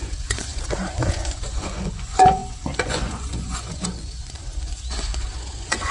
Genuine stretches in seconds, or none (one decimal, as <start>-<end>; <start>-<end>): none